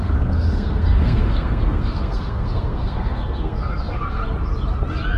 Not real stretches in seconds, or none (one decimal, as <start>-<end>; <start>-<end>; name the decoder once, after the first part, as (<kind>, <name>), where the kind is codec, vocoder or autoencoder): 0.0-4.2 (codec, SNAC)